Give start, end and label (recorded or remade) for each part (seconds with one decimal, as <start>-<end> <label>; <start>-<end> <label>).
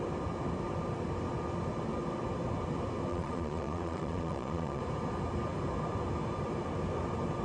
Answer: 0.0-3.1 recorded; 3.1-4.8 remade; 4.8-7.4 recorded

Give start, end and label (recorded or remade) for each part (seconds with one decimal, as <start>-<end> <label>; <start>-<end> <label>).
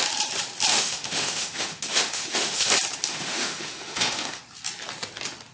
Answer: 0.0-0.7 recorded; 0.7-2.7 remade; 2.7-3.1 recorded; 3.1-4.4 remade; 4.4-5.5 recorded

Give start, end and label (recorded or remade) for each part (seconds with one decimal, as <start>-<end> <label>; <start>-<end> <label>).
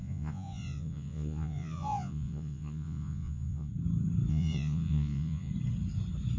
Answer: 0.0-3.7 remade; 3.7-4.3 recorded; 4.3-5.5 remade; 5.5-6.4 recorded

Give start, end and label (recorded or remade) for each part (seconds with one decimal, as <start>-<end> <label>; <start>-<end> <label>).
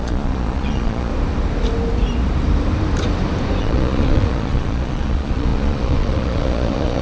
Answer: 0.0-1.1 remade; 1.1-3.6 recorded; 3.6-7.0 remade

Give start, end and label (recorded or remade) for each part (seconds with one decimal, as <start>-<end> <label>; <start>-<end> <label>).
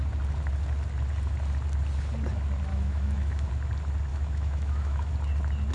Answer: 0.0-2.7 recorded; 2.7-3.5 remade; 3.5-4.1 recorded; 4.1-5.1 remade; 5.1-5.7 recorded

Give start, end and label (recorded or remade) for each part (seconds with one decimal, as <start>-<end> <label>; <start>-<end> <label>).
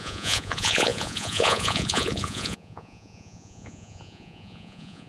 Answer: 0.0-5.1 remade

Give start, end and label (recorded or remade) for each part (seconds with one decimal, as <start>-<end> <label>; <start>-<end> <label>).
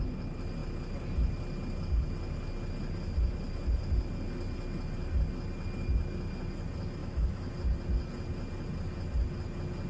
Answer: 0.0-7.0 recorded; 7.0-7.5 remade; 7.5-9.9 recorded